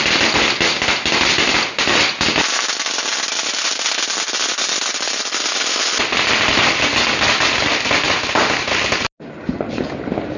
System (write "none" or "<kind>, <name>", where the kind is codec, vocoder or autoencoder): none